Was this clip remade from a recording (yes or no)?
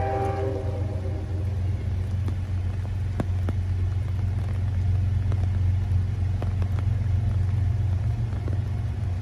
no